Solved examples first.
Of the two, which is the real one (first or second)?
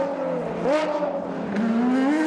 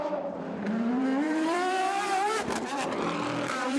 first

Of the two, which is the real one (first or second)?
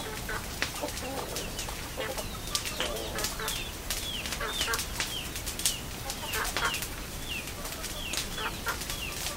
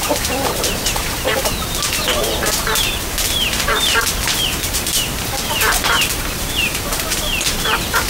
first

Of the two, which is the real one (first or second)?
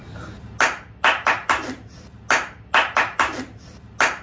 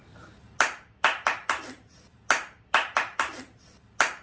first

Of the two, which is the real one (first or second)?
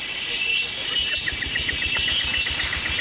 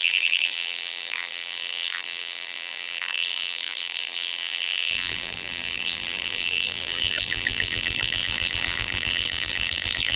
first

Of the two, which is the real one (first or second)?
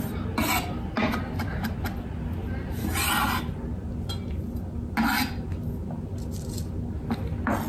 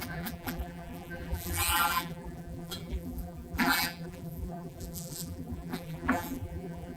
first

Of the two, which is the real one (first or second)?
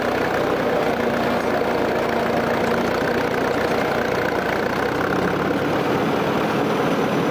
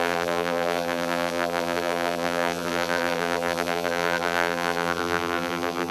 first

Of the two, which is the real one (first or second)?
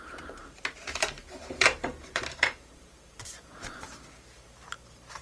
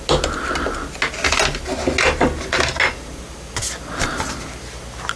second